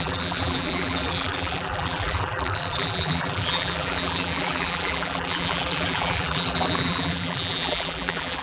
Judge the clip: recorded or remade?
remade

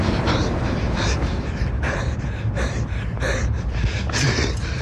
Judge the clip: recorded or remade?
remade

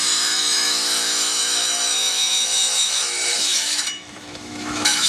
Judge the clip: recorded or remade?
remade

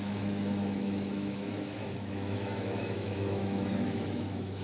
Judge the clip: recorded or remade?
remade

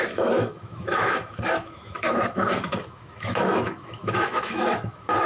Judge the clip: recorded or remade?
remade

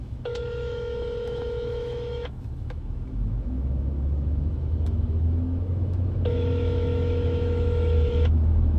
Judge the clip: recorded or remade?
remade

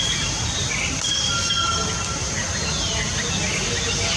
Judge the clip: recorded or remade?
recorded